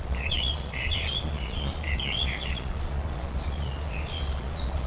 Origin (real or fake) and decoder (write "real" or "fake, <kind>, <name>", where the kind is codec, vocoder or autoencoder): fake, vocoder, Vocos